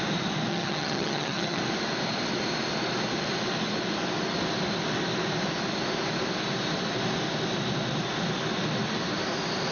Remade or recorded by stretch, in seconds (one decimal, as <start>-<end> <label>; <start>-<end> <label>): 0.0-0.5 recorded; 0.5-1.6 remade; 1.6-9.7 recorded